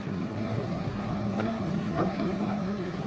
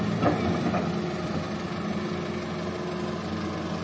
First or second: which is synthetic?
first